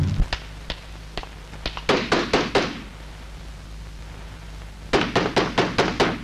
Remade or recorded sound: recorded